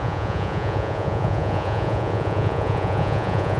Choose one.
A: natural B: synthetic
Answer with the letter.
B